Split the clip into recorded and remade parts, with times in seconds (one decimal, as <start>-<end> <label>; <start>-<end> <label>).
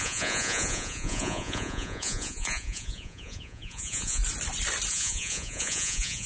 0.0-4.2 remade; 4.2-4.9 recorded; 4.9-6.3 remade